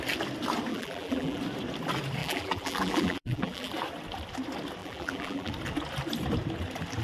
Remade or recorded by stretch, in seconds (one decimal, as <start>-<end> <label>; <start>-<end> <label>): 0.0-0.7 recorded; 0.7-1.4 remade; 1.4-2.2 recorded; 2.2-3.7 remade; 3.7-4.8 recorded; 4.8-5.5 remade; 5.5-7.0 recorded